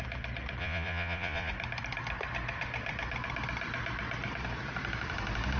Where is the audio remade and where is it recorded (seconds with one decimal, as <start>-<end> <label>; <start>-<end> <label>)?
0.0-0.6 recorded; 0.6-1.5 remade; 1.5-5.6 recorded